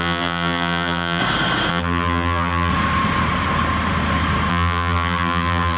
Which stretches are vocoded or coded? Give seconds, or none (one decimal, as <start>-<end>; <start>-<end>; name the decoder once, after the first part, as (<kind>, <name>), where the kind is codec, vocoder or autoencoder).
0.0-1.2 (vocoder, BigVGAN v2); 1.7-2.7; 4.5-5.8